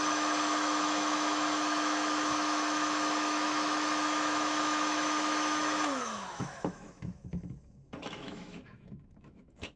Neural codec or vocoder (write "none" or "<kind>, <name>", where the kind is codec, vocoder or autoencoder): autoencoder, DAC-VAE